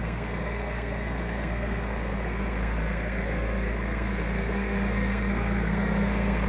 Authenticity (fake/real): fake